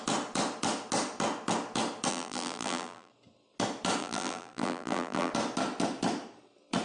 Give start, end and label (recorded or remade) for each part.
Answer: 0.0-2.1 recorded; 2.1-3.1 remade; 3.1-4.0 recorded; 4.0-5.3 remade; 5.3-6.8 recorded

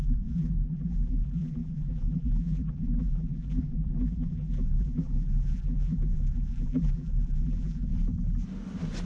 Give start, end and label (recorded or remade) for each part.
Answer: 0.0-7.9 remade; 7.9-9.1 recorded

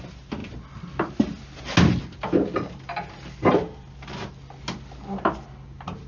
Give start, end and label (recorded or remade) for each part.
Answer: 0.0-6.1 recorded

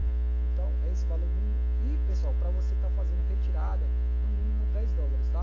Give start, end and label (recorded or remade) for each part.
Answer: 0.0-5.4 recorded

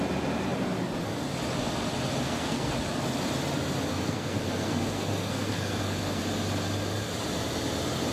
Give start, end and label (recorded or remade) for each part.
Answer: 0.0-2.2 recorded; 2.2-2.7 remade; 2.7-3.9 recorded; 3.9-6.2 remade; 6.2-8.1 recorded

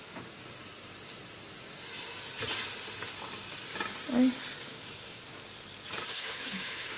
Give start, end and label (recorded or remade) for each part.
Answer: 0.0-4.7 recorded; 4.7-5.2 remade; 5.2-6.1 recorded; 6.1-7.0 remade